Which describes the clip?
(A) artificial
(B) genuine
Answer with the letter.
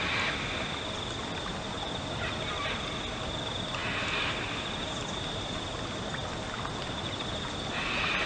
B